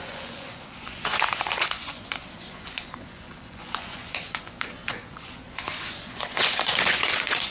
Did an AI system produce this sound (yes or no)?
yes